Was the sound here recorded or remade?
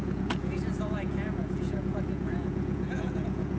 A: remade